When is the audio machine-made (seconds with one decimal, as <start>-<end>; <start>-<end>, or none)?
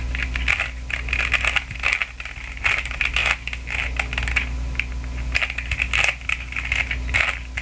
none